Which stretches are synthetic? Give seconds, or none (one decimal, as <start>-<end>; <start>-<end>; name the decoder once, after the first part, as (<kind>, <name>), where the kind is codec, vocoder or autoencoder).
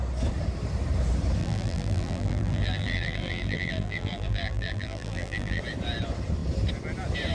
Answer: 1.4-5.6 (vocoder, BigVGAN v2)